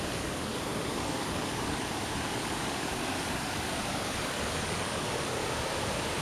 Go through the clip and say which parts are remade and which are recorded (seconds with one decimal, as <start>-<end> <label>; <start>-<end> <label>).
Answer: 0.0-5.4 remade; 5.4-6.2 recorded